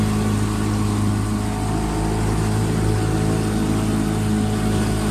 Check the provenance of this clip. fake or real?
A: real